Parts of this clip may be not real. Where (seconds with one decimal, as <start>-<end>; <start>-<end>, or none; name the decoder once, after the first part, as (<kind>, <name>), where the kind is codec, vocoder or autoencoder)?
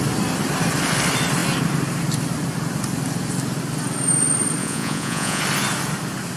4.6-5.4 (vocoder, Vocos)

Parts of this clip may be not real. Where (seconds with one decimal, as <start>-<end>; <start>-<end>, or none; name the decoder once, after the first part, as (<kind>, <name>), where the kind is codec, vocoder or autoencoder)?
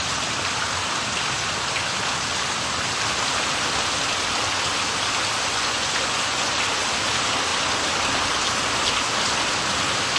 5.5-6.5 (vocoder, Vocos)